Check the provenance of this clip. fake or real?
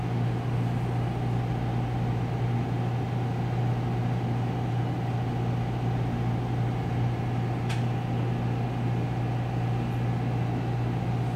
real